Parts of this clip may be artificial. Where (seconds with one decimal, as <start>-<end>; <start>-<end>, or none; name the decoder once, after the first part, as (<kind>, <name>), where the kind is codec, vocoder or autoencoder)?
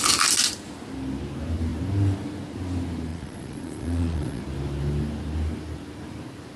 3.1-4.4 (vocoder, Vocos)